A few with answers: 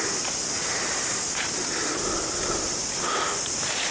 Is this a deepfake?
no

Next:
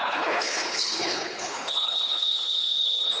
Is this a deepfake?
yes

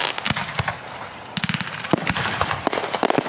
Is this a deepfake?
no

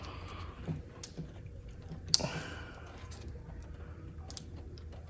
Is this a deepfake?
no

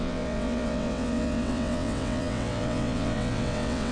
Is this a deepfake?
yes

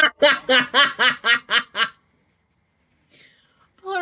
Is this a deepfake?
no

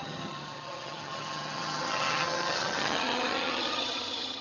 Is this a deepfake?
yes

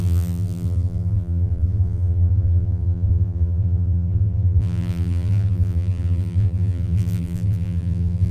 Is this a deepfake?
yes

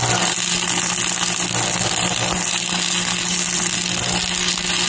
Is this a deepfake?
no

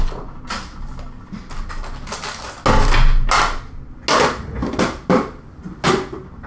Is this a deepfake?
no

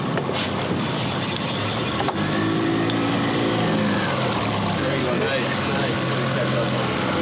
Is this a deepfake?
no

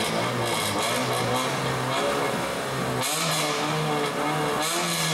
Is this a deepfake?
no